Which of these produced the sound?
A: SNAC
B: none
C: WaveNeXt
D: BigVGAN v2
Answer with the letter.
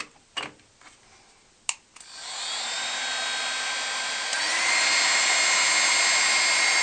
B